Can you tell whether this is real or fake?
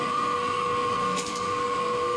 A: fake